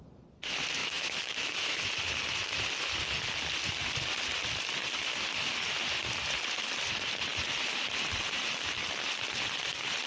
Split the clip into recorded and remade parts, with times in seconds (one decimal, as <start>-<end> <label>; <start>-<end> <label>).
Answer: 0.0-0.8 recorded; 0.8-1.8 remade; 1.8-10.1 recorded